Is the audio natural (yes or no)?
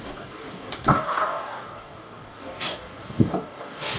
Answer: no